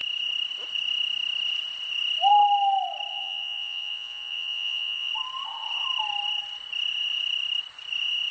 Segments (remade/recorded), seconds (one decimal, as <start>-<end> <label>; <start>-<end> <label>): 0.0-3.1 recorded; 3.1-5.1 remade; 5.1-8.3 recorded